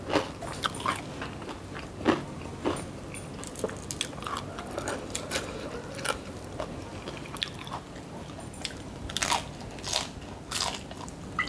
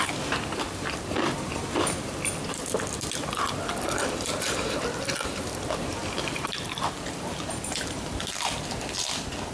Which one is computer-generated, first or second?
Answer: second